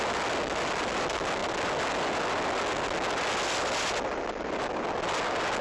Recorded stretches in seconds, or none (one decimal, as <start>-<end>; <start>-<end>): 0.0-5.6